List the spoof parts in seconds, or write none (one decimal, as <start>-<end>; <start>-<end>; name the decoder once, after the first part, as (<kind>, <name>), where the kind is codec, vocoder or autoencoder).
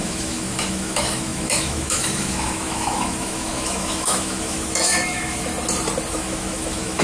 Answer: 0.0-5.5 (autoencoder, DAC-VAE); 6.1-7.0